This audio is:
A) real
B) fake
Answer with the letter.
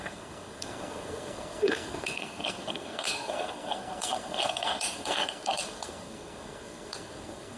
B